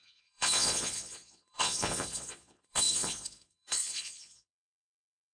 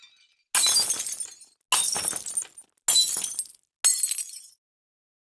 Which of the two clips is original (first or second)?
second